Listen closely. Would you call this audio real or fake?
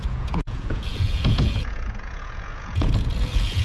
fake